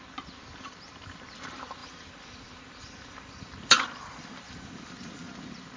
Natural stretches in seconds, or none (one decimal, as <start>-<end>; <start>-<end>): 0.0-1.8; 5.3-5.8

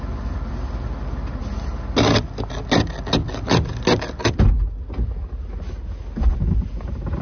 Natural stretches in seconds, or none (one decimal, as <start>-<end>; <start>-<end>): 0.0-7.2

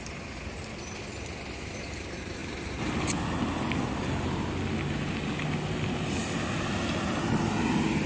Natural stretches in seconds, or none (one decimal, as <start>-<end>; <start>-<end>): 0.0-8.1

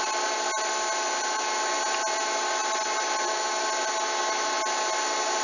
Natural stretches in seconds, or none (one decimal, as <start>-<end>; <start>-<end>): 0.0-5.4

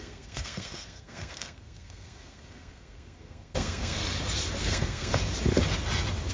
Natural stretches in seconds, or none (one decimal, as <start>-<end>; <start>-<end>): 4.0-4.6; 5.1-6.3